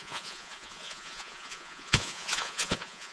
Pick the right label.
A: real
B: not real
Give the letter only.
B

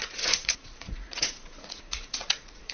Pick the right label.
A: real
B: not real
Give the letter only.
B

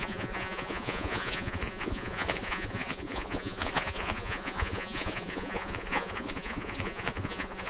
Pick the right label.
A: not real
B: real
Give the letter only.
A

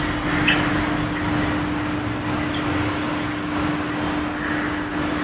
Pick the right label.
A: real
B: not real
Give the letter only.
A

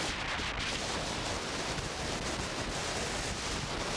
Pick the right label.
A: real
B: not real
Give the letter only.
A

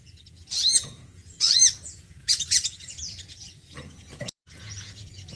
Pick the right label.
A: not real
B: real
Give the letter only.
A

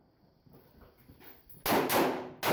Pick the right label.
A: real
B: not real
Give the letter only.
A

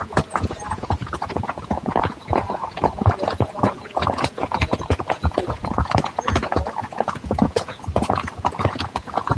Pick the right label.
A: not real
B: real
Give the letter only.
A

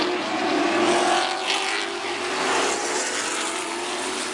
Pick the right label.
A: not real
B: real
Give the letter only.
B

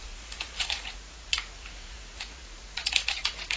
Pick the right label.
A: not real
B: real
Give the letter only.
A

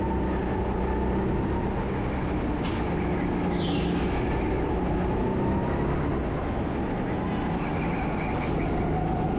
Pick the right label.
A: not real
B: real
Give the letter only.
B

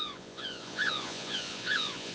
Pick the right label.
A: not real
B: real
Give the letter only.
A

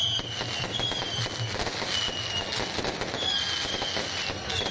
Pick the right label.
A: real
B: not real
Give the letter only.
A